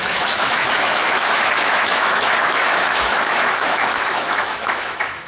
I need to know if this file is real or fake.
fake